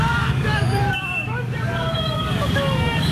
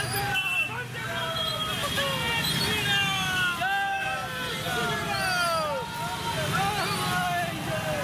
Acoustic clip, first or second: second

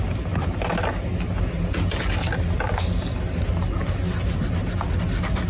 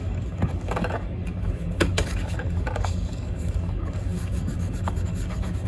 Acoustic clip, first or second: first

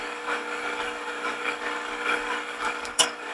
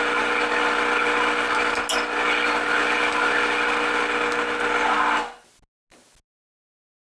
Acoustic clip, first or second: second